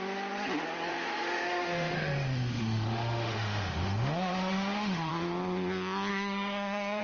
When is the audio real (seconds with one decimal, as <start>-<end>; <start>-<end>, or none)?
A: 0.0-0.9; 5.1-6.1